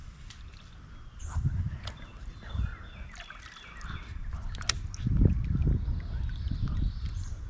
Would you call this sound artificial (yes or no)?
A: no